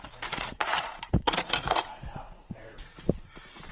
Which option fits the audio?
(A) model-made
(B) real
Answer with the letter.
A